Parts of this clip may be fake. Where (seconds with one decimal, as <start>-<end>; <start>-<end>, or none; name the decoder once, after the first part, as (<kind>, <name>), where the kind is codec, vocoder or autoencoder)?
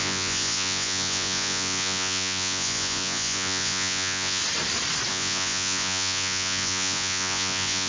0.0-4.4 (vocoder, Vocos); 5.1-7.9